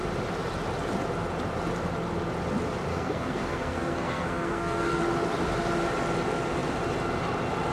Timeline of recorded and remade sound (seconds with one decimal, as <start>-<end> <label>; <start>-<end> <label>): 0.0-2.9 recorded; 2.9-5.0 remade; 5.0-7.7 recorded